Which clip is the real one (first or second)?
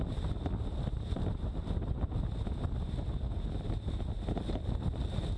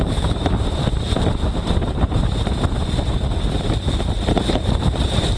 first